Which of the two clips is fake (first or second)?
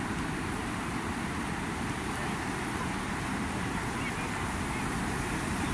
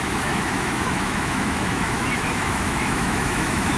second